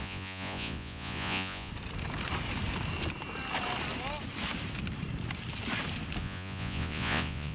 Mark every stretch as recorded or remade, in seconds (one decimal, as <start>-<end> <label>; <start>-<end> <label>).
0.0-1.7 remade; 1.7-6.2 recorded; 6.2-7.5 remade